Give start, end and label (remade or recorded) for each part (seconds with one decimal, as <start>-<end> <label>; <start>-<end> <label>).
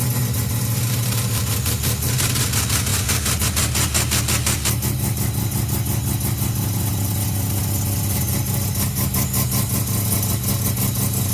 0.0-2.9 recorded; 2.9-3.4 remade; 3.4-11.3 recorded